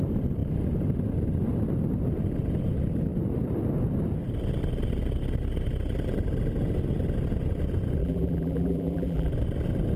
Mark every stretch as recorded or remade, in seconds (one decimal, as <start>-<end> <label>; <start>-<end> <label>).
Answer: 0.0-8.0 recorded; 8.0-9.3 remade; 9.3-10.0 recorded